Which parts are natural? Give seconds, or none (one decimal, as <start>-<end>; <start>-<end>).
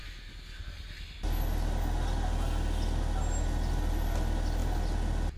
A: 0.0-5.4